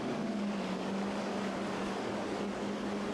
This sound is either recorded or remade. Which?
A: remade